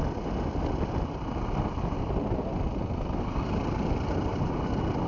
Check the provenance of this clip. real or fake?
real